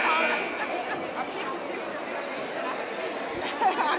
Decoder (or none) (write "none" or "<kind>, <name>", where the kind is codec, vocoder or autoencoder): none